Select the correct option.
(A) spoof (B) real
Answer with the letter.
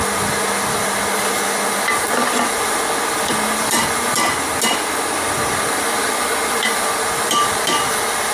B